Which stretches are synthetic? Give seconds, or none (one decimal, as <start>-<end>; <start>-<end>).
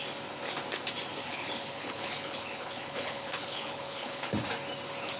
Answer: 1.2-4.3